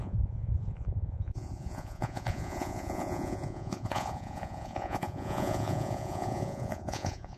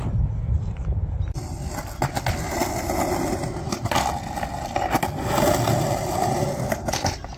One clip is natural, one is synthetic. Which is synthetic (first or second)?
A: first